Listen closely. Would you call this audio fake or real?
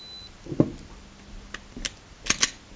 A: real